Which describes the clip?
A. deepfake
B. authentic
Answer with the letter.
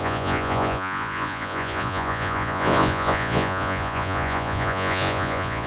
A